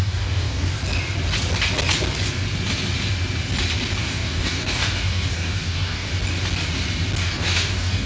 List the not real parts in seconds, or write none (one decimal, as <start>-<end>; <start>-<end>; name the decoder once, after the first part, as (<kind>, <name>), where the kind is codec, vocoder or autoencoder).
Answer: 0.0-0.7 (codec, DAC); 4.0-6.1; 7.2-8.1